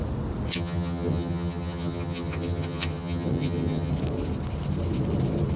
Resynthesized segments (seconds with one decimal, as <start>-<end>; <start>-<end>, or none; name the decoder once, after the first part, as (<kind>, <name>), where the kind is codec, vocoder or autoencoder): 0.5-3.9 (vocoder, HiFi-GAN)